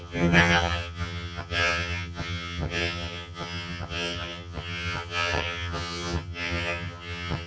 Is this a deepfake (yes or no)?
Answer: yes